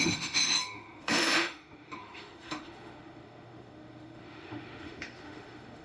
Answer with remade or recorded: remade